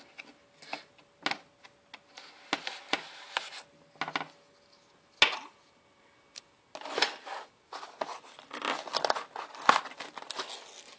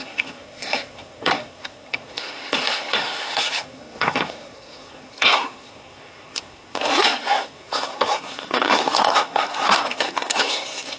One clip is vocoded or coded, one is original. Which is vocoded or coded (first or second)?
second